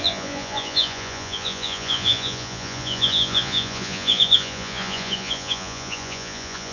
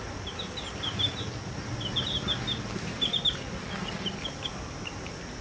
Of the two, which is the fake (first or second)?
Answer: first